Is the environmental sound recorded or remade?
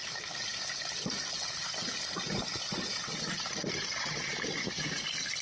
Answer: recorded